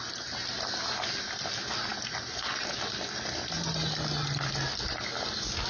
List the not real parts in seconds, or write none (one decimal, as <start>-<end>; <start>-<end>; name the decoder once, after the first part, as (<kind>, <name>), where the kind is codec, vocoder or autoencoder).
none